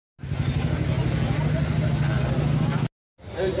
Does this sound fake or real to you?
real